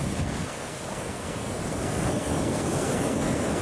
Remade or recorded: remade